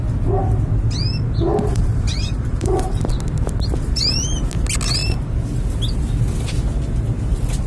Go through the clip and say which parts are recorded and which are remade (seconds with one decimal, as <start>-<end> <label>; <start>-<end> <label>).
0.0-1.7 recorded; 1.7-3.1 remade; 3.1-7.7 recorded